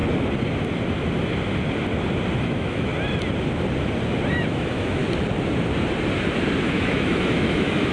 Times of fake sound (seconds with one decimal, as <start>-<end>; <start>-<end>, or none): 2.4-2.9; 4.3-5.0; 6.6-7.9